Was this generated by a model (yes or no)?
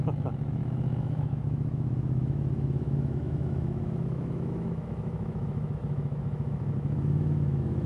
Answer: yes